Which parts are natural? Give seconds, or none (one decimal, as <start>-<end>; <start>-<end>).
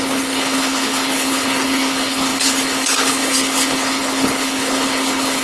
none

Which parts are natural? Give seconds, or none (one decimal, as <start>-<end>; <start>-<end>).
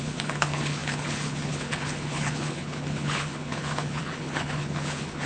none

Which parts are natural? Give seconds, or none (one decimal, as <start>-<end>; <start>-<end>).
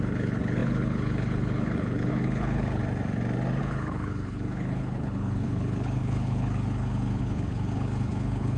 2.8-3.6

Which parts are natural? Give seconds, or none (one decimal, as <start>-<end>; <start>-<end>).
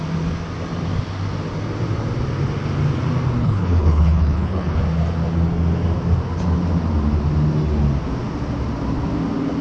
0.0-3.4; 4.8-9.6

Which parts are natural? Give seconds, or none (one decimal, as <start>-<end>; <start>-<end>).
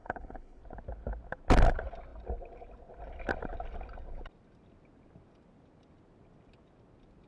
0.6-7.3